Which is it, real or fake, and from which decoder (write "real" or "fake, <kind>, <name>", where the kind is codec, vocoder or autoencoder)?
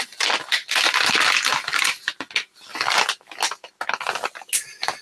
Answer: real